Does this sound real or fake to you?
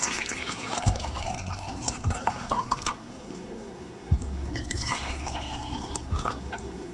fake